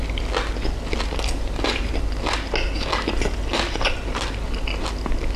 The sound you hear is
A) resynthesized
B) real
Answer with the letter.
B